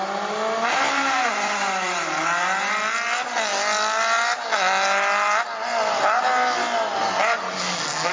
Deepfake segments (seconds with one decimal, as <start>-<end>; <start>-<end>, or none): 0.7-2.8